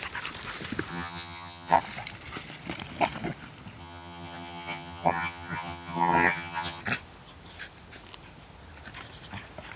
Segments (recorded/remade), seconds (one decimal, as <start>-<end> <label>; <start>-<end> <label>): 0.0-0.9 recorded; 0.9-1.8 remade; 1.8-3.8 recorded; 3.8-6.8 remade; 6.8-9.8 recorded